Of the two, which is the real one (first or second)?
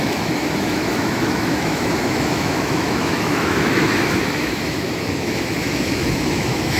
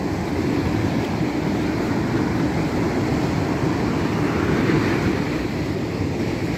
second